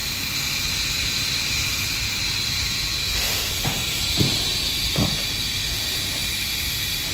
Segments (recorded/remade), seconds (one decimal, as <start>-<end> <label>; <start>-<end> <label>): 0.0-3.0 recorded; 3.0-3.5 remade; 3.5-7.1 recorded